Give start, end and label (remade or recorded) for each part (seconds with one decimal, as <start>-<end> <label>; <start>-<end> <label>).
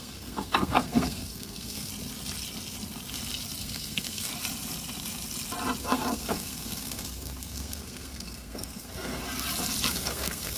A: 0.0-1.9 remade; 1.9-3.6 recorded; 3.6-4.3 remade; 4.3-5.8 recorded; 5.8-9.2 remade; 9.2-9.9 recorded; 9.9-10.6 remade